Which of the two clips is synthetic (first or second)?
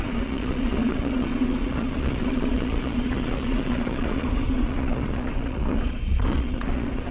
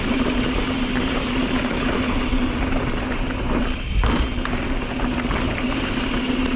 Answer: first